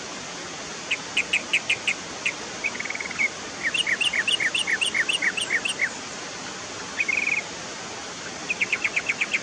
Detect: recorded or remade recorded